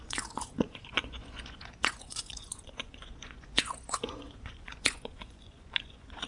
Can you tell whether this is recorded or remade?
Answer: remade